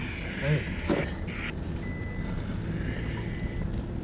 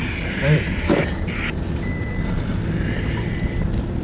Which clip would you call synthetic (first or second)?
second